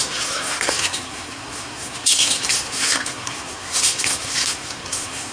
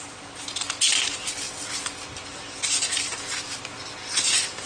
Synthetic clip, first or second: first